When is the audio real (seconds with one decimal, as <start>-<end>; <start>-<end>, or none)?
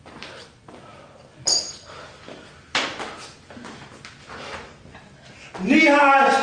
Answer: 0.0-6.4